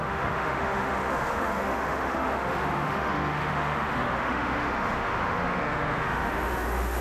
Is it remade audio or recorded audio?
remade